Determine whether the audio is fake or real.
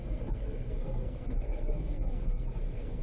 fake